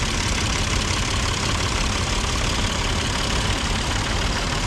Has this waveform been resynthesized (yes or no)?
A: no